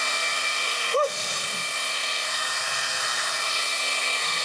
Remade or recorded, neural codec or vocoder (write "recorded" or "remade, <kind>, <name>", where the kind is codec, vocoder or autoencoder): remade, codec, SNAC